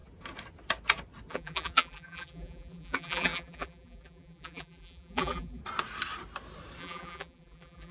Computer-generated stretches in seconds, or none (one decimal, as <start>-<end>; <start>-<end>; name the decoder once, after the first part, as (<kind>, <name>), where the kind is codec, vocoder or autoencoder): 1.3-5.6 (vocoder, BigVGAN v2); 6.8-7.9